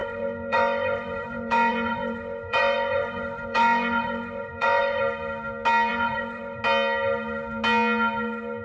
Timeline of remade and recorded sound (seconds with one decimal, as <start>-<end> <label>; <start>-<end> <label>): 0.0-5.0 remade; 5.0-5.9 recorded; 5.9-6.6 remade; 6.6-8.6 recorded